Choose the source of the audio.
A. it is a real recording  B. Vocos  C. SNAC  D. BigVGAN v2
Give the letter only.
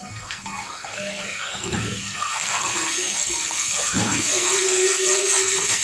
C